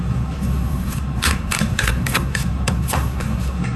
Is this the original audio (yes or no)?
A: no